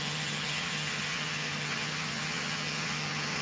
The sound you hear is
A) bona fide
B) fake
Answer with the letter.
B